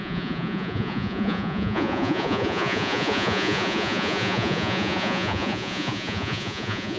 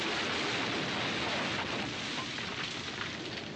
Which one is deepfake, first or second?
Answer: first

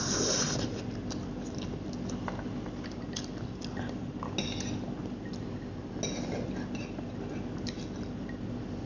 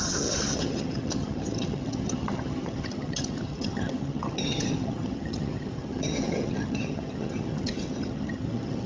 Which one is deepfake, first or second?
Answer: second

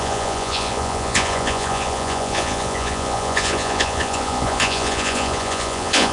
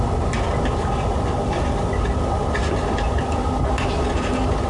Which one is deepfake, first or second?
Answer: first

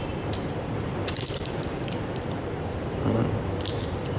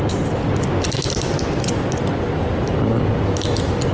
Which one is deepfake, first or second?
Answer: first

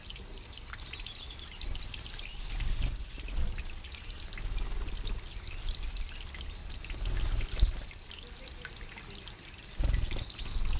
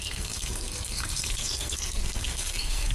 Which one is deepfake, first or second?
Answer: second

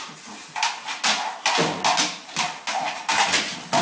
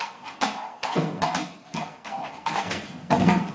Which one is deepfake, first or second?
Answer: second